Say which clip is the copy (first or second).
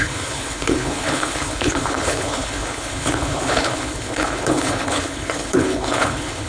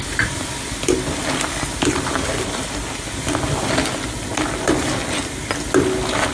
first